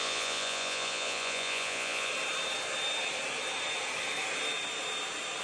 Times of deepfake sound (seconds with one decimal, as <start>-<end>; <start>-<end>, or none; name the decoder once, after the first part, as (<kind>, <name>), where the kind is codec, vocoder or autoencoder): 0.0-2.1 (vocoder, Vocos)